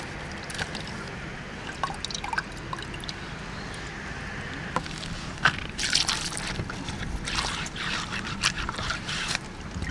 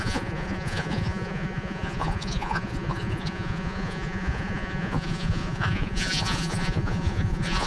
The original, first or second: first